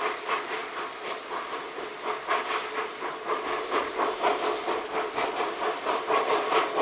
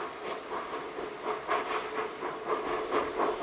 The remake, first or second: first